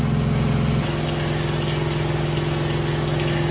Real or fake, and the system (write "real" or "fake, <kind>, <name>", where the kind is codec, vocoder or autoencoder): real